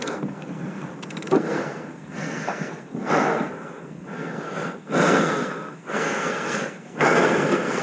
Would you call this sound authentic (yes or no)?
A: no